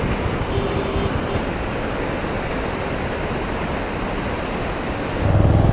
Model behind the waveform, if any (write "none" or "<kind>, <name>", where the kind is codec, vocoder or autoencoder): none